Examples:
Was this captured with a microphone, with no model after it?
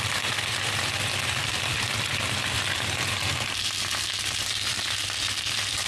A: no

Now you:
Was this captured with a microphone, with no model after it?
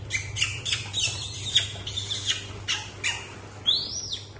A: yes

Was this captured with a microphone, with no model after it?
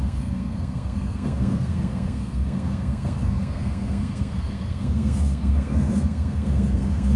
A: no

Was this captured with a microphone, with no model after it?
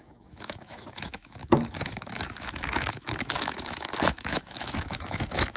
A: no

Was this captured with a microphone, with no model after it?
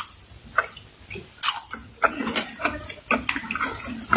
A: yes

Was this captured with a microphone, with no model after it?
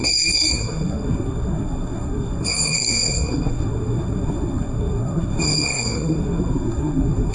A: no